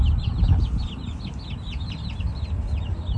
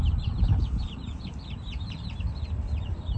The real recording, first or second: first